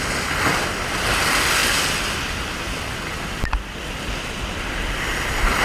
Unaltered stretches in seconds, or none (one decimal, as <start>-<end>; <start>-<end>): 0.0-1.6; 5.0-5.6